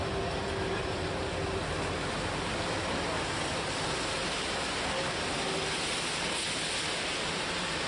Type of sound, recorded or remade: recorded